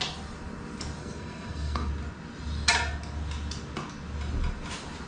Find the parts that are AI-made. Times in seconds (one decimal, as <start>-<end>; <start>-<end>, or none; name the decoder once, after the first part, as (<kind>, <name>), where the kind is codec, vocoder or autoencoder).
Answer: 1.0-1.9 (codec, SNAC)